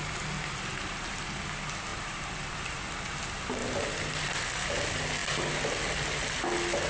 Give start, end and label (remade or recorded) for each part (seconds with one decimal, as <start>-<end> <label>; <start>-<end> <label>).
0.0-1.9 recorded; 1.9-3.0 remade; 3.0-3.6 recorded; 3.6-4.5 remade; 4.5-6.9 recorded